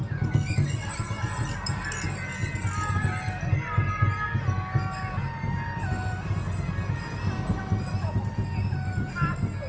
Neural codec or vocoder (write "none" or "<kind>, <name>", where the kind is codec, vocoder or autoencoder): none